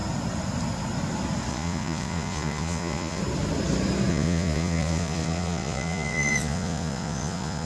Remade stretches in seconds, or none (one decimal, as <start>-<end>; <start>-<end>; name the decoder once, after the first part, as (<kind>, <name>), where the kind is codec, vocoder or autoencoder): 1.5-3.2 (vocoder, Vocos); 4.1-7.7